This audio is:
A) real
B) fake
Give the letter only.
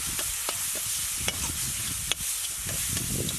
A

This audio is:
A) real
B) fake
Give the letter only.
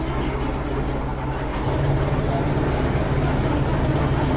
A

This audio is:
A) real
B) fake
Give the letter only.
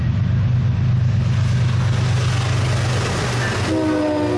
A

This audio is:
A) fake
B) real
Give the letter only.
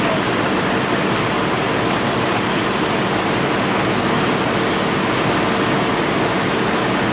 B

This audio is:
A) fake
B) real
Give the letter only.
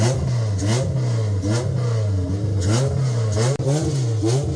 B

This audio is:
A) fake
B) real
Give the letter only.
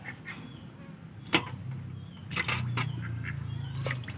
B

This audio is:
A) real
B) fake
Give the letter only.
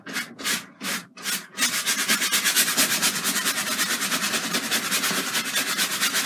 A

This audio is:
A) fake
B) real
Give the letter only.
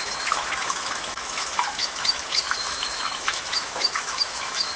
A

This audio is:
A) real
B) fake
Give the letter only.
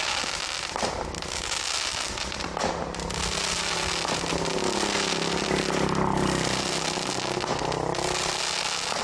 A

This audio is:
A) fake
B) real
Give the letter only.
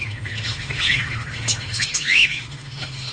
A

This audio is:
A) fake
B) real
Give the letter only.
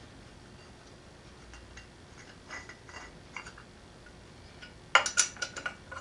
B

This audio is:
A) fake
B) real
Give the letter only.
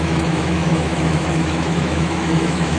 A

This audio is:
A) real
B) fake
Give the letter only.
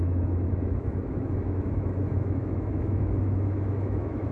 B